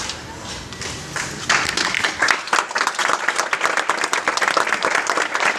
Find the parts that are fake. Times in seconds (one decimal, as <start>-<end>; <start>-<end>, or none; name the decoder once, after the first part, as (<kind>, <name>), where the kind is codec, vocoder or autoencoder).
none